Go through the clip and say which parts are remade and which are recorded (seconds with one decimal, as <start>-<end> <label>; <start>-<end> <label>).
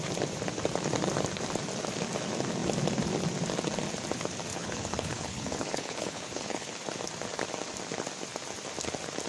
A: 0.0-4.5 recorded; 4.5-6.7 remade; 6.7-9.3 recorded